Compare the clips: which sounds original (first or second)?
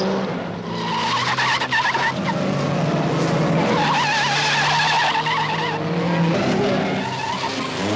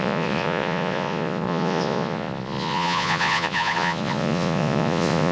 first